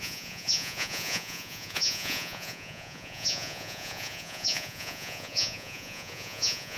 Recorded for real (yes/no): no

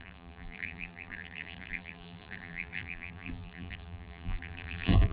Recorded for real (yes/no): no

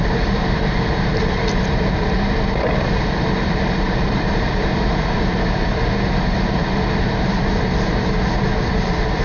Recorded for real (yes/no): no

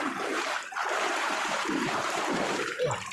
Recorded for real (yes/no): no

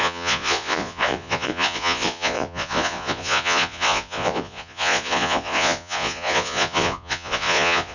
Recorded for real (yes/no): no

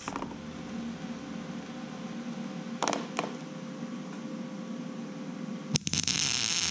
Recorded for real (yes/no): yes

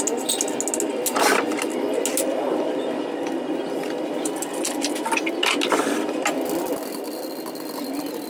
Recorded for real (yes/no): yes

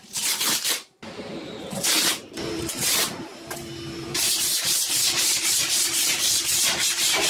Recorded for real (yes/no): no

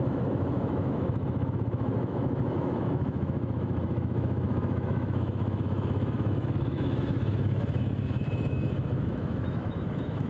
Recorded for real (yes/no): no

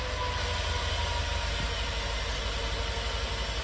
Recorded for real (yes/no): yes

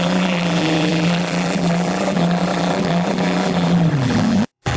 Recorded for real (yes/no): no